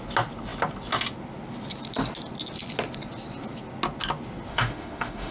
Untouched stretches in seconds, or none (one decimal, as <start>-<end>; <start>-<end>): 0.0-4.5